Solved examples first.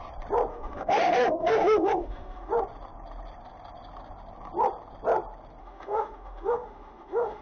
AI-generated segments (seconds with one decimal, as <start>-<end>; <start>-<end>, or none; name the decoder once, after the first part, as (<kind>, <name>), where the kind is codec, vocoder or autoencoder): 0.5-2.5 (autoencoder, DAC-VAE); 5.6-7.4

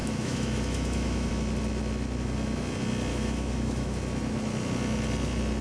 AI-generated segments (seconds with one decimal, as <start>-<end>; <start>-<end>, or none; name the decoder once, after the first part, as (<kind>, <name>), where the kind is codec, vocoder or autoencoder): 0.0-1.3 (autoencoder, DAC-VAE); 3.1-4.0

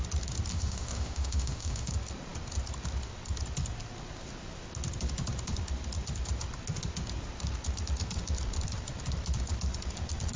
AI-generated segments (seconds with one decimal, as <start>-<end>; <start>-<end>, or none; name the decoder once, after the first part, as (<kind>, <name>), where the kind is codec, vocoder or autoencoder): 0.5-1.9 (autoencoder, DAC-VAE)

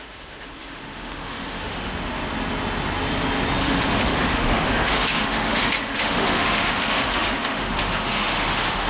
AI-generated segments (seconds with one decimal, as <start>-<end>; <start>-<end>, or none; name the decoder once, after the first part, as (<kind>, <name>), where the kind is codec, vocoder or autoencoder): 0.0-1.9 (autoencoder, DAC-VAE); 3.6-8.9

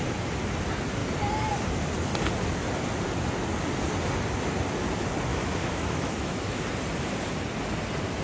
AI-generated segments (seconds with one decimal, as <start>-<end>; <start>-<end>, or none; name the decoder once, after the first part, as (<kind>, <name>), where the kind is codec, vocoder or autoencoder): 5.3-6.6 (autoencoder, DAC-VAE)

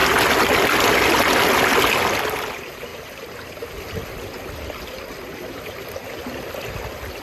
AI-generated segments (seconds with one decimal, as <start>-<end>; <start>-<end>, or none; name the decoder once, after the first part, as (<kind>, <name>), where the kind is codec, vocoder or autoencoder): none